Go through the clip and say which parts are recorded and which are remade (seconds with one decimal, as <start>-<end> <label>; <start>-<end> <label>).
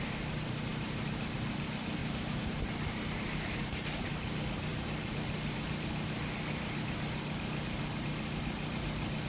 0.0-9.3 remade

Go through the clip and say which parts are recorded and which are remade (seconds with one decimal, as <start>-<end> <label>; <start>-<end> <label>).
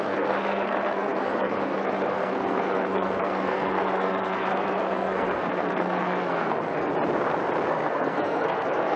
0.0-6.9 remade; 6.9-7.7 recorded; 7.7-9.0 remade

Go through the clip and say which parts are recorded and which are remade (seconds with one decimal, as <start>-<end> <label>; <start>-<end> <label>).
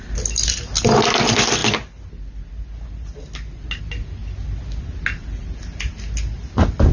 0.0-6.9 recorded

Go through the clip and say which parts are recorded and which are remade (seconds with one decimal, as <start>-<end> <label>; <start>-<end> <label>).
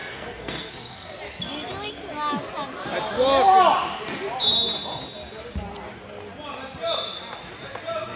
0.0-1.1 remade; 1.1-8.2 recorded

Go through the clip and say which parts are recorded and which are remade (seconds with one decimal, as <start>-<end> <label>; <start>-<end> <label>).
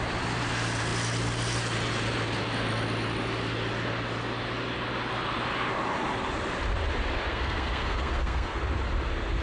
0.0-7.3 recorded; 7.3-8.6 remade; 8.6-9.4 recorded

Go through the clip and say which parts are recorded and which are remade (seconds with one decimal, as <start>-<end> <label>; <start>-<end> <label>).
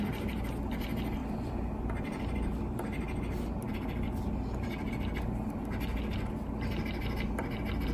0.0-7.9 recorded